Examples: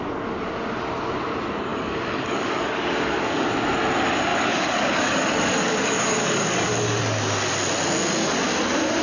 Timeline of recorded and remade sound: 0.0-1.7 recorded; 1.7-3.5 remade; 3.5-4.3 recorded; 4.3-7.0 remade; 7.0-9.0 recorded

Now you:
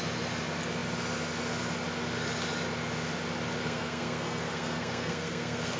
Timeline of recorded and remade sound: 0.0-3.6 recorded; 3.6-5.8 remade

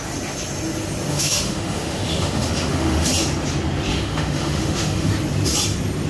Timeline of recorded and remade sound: 0.0-1.1 recorded; 1.1-3.1 remade; 3.1-3.9 recorded; 3.9-5.1 remade; 5.1-6.1 recorded

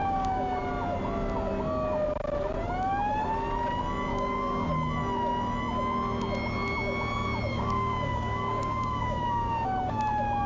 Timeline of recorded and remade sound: 0.0-0.6 remade; 0.6-4.1 recorded; 4.1-4.7 remade; 4.7-7.5 recorded; 7.5-10.0 remade; 10.0-10.5 recorded

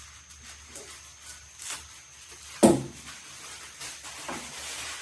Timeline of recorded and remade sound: 0.0-5.0 recorded

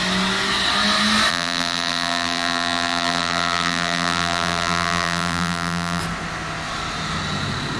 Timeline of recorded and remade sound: 0.0-1.3 recorded; 1.3-6.0 remade; 6.0-7.8 recorded

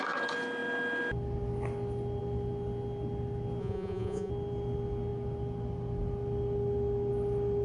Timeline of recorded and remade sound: 0.0-3.6 recorded; 3.6-4.3 remade; 4.3-7.6 recorded